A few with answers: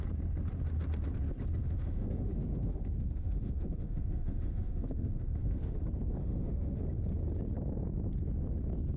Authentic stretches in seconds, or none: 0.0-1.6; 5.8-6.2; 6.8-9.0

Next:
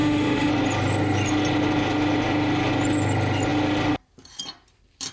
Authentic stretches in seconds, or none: 0.5-5.1

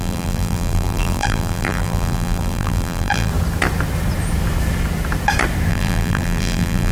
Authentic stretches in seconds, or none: 3.3-5.7

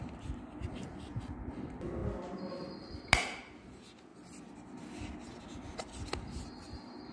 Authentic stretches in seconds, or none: 0.0-7.1

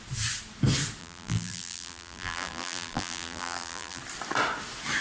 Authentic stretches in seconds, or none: 0.0-1.0; 4.0-5.0

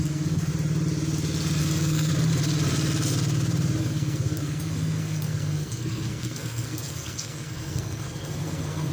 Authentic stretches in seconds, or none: 0.5-1.6; 2.1-3.8

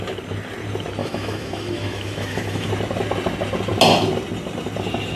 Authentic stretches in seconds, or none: 0.0-1.0; 2.7-5.2

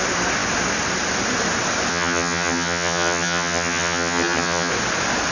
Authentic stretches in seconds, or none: 0.0-1.9; 4.7-5.3